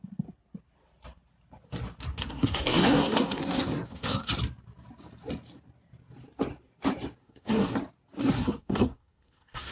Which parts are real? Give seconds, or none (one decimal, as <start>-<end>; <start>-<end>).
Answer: 0.0-2.1; 4.3-7.2; 7.8-8.2